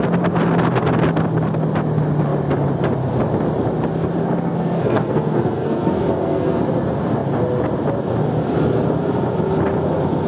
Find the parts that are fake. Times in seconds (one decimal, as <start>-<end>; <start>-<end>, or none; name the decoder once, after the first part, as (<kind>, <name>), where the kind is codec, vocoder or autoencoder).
4.2-6.6 (codec, SNAC)